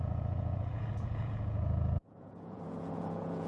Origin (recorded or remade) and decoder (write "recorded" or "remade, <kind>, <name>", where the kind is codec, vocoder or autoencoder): remade, vocoder, Vocos